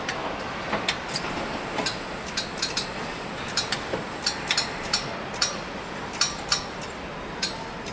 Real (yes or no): no